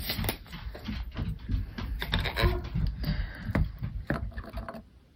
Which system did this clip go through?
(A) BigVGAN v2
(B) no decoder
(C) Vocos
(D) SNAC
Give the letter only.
B